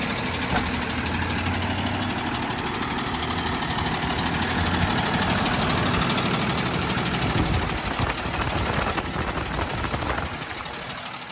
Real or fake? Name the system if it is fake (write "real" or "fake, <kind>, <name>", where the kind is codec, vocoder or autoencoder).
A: real